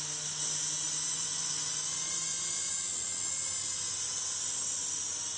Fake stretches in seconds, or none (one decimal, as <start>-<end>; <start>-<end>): 1.1-2.7